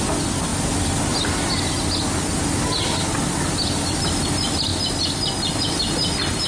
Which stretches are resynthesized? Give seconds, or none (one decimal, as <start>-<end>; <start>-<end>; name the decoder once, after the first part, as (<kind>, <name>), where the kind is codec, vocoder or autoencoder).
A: 0.0-0.5 (vocoder, BigVGAN v2); 4.0-4.7; 5.6-6.5